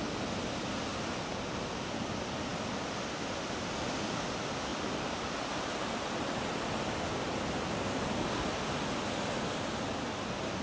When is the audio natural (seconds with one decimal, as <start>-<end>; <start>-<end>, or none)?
0.0-0.9; 1.7-4.7; 6.1-10.6

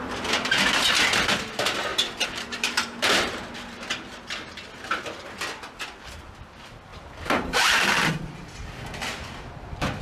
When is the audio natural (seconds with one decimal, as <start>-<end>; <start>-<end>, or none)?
0.0-1.9; 4.2-6.9; 8.1-10.0

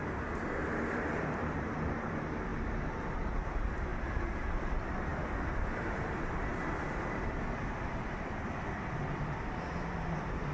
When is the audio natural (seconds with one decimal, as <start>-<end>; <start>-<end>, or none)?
2.5-3.5; 3.9-4.4